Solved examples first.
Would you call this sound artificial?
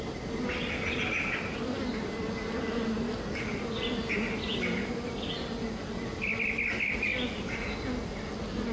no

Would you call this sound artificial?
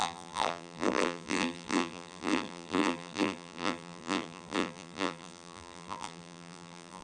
yes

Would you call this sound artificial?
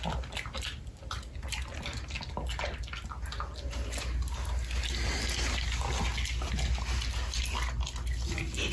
no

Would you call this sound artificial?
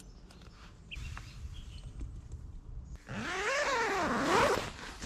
no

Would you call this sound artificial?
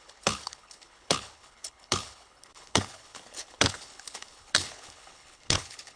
yes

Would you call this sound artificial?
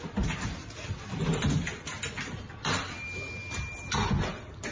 no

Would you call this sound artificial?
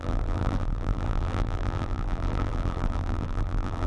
yes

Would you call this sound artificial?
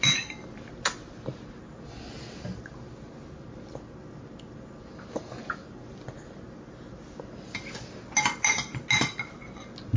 no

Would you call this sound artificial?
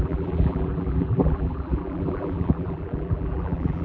yes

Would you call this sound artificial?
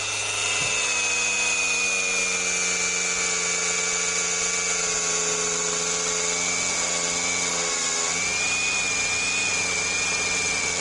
no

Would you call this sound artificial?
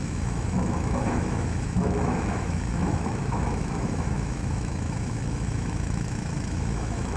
yes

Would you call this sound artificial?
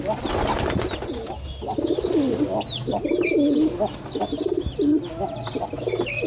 no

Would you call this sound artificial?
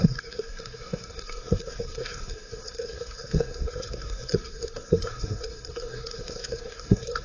yes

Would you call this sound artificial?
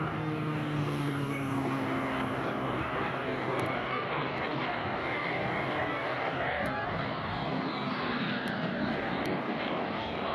yes